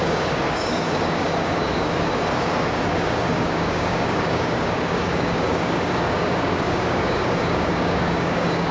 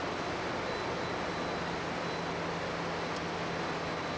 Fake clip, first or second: first